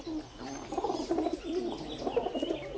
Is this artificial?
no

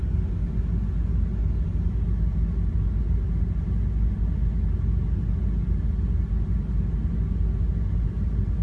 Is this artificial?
no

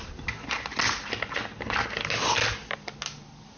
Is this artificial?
no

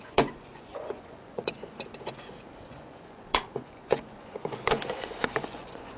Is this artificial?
yes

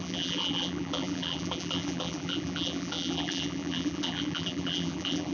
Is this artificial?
yes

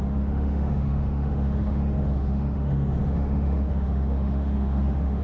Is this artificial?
yes